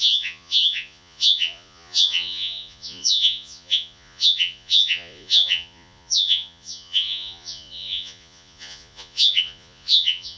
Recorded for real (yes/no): no